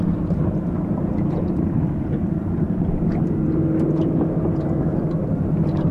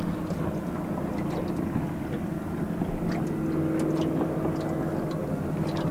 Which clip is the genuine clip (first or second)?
second